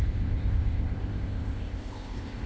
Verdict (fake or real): fake